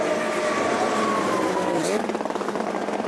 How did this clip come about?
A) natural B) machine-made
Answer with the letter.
A